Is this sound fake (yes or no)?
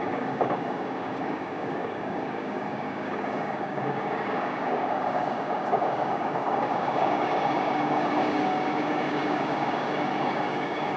yes